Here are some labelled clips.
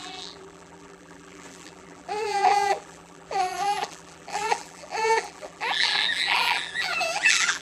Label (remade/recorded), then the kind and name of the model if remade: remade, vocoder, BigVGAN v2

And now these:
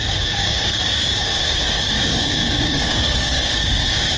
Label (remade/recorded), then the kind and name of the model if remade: remade, codec, DAC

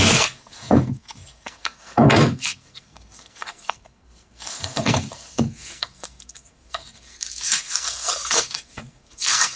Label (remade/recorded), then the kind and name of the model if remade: remade, codec, SNAC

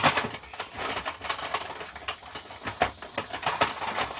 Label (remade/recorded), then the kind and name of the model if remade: recorded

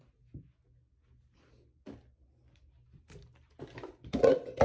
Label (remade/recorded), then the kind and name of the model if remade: recorded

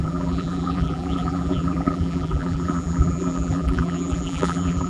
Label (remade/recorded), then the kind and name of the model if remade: remade, vocoder, BigVGAN v2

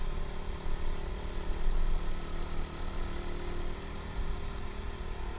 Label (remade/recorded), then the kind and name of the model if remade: recorded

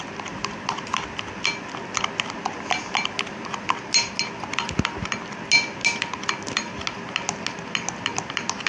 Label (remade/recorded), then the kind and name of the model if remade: recorded